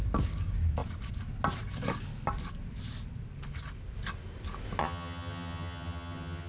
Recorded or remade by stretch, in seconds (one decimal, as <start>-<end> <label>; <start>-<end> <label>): 0.0-4.8 recorded; 4.8-6.5 remade